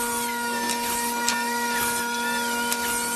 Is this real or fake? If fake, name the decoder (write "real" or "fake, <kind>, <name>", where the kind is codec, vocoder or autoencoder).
real